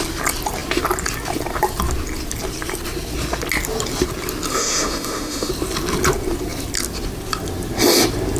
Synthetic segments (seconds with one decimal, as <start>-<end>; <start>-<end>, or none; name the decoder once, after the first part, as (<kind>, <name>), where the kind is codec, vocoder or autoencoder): 4.5-5.5 (autoencoder, DAC-VAE)